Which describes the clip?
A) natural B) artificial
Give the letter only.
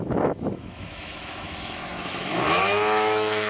B